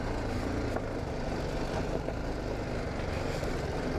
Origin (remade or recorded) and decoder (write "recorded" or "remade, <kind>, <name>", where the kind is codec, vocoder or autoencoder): recorded